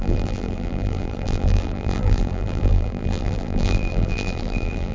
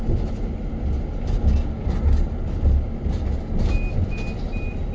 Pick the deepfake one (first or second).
first